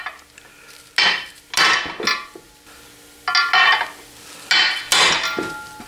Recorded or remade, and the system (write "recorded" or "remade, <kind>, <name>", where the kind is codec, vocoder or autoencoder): recorded